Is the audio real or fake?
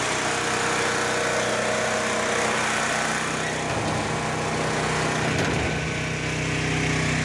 real